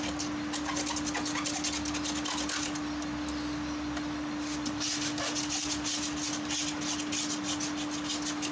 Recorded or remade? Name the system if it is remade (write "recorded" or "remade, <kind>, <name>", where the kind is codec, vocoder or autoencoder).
recorded